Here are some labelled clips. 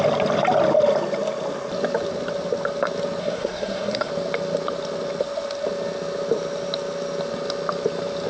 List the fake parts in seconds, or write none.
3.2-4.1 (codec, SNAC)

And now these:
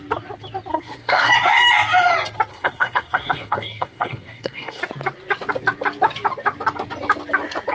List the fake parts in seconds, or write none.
0.7-1.3 (codec, SNAC); 2.5-4.8

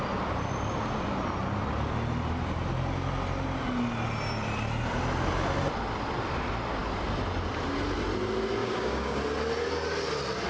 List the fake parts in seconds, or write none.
8.6-9.2 (codec, DAC)